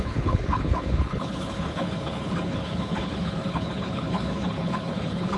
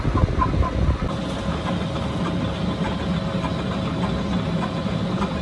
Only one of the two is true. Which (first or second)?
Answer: second